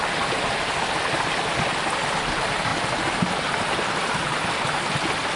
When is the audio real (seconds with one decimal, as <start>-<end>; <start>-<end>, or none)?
0.0-5.4